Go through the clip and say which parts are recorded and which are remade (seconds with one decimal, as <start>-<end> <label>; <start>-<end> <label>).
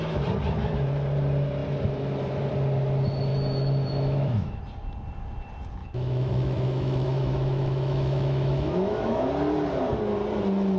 0.0-3.3 recorded; 3.3-4.6 remade; 4.6-5.8 recorded; 5.8-9.3 remade; 9.3-10.8 recorded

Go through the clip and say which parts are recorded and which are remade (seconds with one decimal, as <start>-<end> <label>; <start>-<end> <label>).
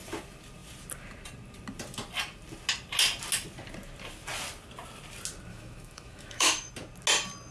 0.0-5.5 recorded; 5.5-6.7 remade; 6.7-7.5 recorded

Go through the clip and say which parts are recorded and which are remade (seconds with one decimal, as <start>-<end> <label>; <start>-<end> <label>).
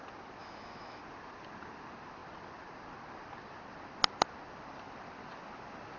0.0-0.4 recorded; 0.4-1.0 remade; 1.0-6.0 recorded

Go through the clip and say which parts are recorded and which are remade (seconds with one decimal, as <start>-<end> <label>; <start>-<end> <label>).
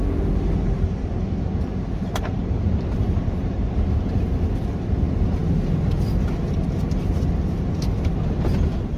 0.0-9.0 recorded